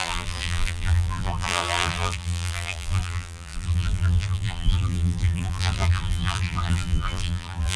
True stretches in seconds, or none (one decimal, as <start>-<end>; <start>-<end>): none